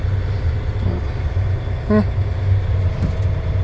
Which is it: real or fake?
real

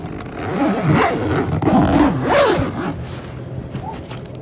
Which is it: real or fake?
real